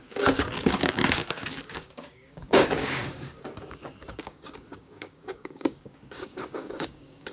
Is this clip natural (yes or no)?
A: no